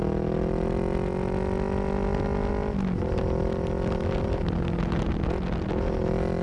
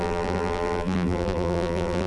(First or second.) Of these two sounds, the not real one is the second